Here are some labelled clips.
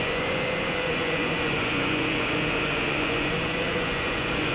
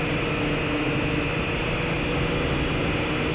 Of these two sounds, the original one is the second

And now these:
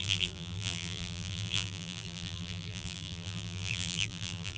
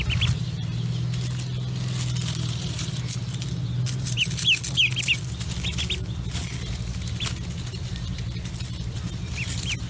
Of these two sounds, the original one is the second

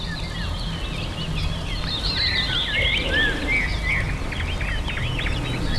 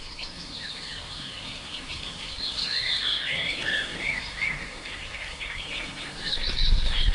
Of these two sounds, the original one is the first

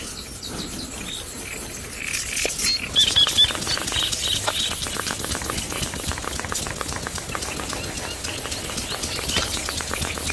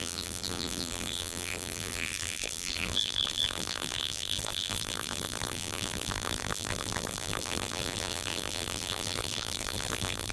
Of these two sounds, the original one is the first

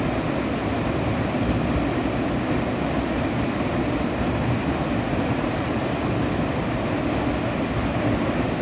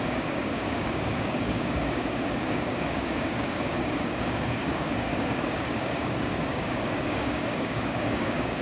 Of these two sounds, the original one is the first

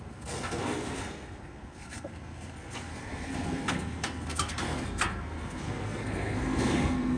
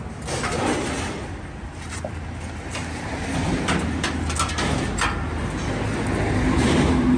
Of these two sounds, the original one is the second